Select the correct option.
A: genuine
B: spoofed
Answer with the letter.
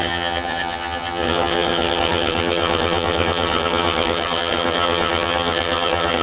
B